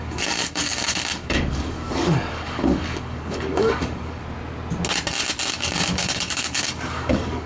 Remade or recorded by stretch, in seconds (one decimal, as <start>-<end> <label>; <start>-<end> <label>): 0.0-4.2 remade; 4.2-5.5 recorded; 5.5-7.5 remade